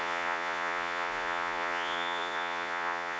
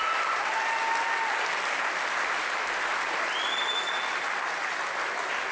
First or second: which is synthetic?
first